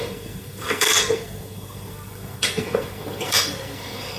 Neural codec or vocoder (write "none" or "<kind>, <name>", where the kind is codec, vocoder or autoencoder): codec, SNAC